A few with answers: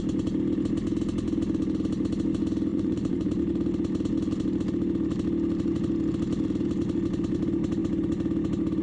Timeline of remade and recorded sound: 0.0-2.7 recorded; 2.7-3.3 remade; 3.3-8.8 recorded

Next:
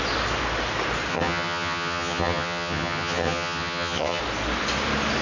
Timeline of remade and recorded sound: 0.0-1.1 recorded; 1.1-4.2 remade; 4.2-5.2 recorded

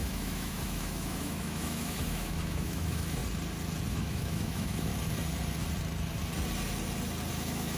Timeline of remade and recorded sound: 0.0-3.2 remade; 3.2-3.9 recorded; 3.9-4.9 remade; 4.9-7.3 recorded; 7.3-7.8 remade

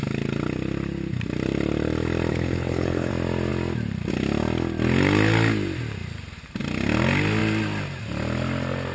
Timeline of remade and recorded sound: 0.0-2.3 recorded; 2.3-3.1 remade; 3.1-8.9 recorded